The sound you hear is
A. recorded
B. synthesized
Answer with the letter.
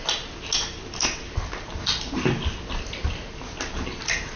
A